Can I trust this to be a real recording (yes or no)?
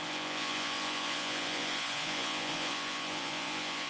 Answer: no